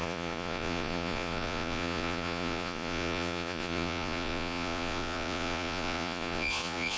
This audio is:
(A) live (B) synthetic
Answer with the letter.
B